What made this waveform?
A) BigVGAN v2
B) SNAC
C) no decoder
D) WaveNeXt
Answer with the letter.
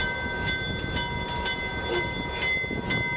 C